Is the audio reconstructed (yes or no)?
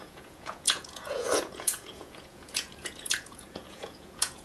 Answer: yes